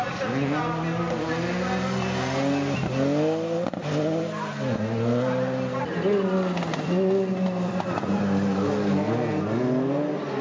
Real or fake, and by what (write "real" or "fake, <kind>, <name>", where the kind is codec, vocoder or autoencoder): real